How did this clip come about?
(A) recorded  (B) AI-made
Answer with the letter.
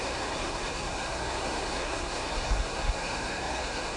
B